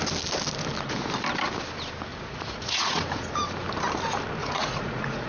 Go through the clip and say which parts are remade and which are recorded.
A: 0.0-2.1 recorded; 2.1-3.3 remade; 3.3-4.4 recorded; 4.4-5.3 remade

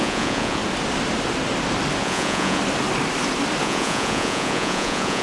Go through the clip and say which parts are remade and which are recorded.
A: 0.0-0.6 remade; 0.6-2.0 recorded; 2.0-2.6 remade; 2.6-3.6 recorded; 3.6-5.2 remade